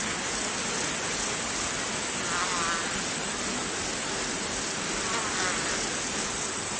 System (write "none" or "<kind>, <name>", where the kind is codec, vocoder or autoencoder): none